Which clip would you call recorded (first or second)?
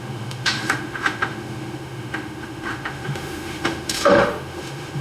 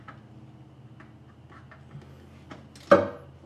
second